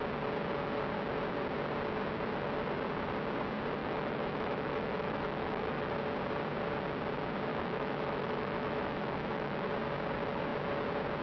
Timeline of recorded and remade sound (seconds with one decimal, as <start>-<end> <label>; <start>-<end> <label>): 0.0-3.8 recorded; 3.8-5.9 remade; 5.9-7.5 recorded; 7.5-9.7 remade; 9.7-11.2 recorded